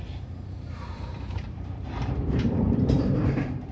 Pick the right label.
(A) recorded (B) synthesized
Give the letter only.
B